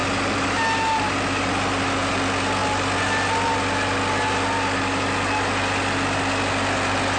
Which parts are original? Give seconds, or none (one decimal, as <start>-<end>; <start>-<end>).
0.0-7.2